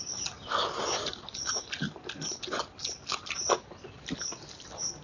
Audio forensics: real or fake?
real